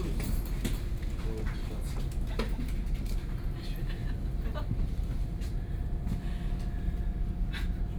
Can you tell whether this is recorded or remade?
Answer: recorded